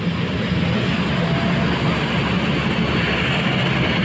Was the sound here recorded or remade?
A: recorded